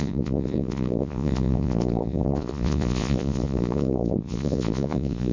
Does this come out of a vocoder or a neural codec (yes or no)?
yes